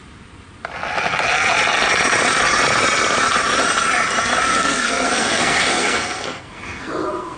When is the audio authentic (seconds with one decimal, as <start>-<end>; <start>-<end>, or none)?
0.0-4.5